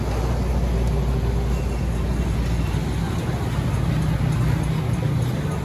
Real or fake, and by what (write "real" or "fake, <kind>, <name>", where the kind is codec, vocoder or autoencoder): real